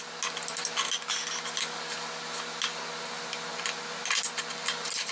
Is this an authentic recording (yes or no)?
yes